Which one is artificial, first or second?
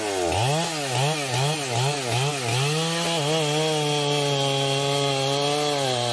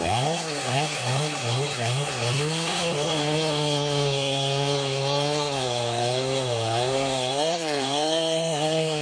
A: second